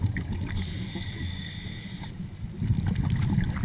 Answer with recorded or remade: recorded